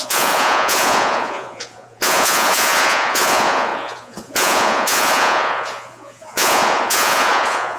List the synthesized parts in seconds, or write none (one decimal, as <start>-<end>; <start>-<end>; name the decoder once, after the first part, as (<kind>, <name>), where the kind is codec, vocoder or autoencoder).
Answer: 0.0-7.8 (vocoder, Vocos)